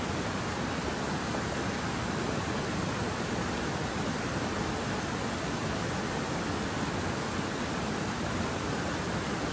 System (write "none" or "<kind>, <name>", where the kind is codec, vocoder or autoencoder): none